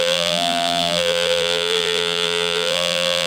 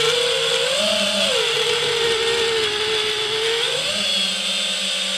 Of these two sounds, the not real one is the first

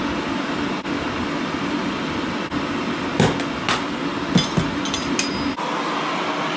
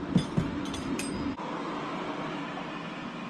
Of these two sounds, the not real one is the second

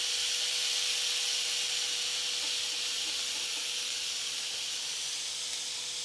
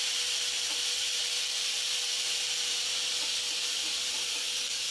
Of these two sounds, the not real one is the second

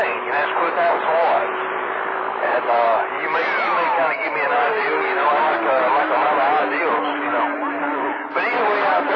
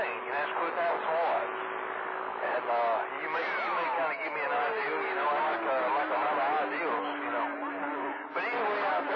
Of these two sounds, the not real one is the first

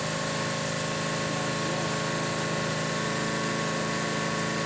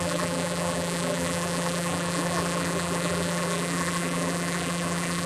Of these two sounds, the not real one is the second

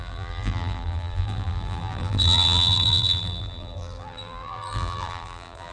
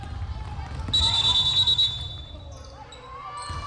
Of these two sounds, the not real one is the first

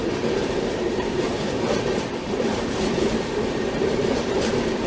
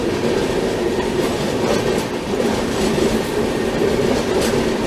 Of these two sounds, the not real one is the first